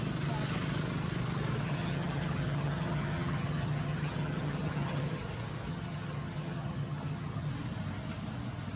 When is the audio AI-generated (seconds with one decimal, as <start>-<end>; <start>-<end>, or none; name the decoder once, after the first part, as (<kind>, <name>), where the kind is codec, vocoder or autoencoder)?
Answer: 1.6-5.2 (vocoder, HiFi-GAN); 5.7-7.5